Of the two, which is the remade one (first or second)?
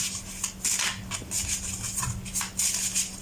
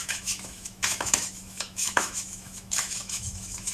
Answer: second